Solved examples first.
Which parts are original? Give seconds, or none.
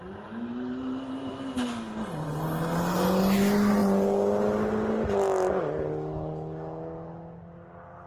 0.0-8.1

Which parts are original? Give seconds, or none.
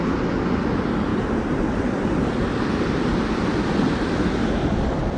0.0-5.2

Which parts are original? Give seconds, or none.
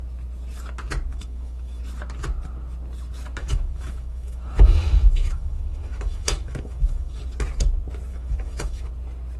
0.0-1.1; 1.8-3.4; 7.2-8.1; 8.9-9.4